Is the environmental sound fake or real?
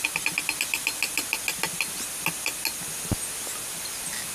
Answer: real